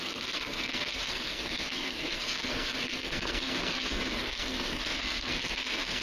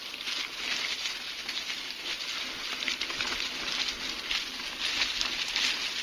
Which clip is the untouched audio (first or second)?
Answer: second